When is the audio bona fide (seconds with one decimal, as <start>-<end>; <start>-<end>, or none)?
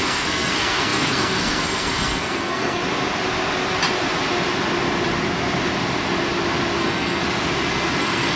2.8-6.8; 7.2-8.0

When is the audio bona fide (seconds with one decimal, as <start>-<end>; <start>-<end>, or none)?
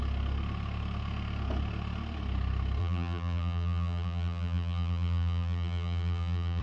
0.0-2.8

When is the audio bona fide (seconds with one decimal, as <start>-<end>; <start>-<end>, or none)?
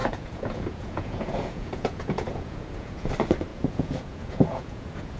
3.1-3.5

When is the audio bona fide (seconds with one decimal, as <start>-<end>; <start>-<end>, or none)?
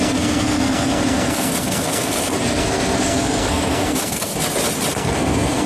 4.3-4.9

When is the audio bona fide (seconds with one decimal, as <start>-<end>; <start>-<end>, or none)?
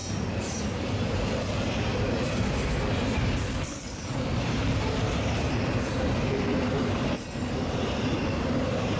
0.0-4.2